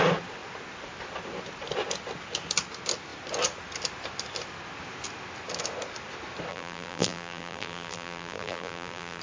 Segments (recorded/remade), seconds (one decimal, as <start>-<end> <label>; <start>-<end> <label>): 0.0-6.5 recorded; 6.5-9.2 remade